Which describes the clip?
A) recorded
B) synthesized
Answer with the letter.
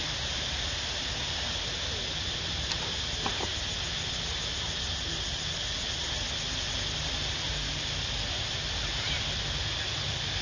A